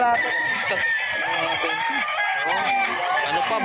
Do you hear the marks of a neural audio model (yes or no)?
no